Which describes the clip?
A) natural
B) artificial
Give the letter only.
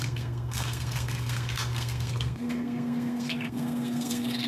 B